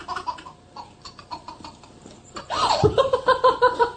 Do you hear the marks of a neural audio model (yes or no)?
yes